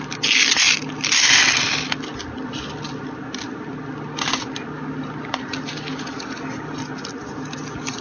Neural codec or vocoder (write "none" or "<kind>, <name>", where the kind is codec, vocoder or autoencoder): none